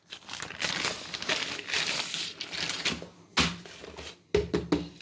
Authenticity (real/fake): real